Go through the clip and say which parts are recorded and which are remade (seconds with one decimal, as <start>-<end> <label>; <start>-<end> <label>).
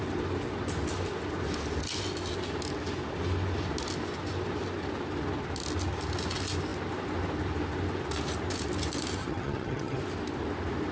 0.0-9.2 recorded; 9.2-10.0 remade; 10.0-10.9 recorded